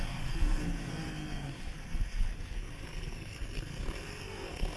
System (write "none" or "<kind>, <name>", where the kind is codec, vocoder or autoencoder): codec, SNAC